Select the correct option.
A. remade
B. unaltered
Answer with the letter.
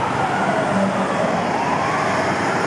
B